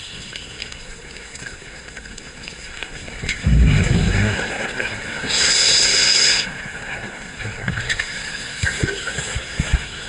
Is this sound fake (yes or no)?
yes